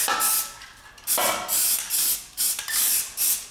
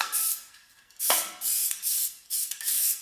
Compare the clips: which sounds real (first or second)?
first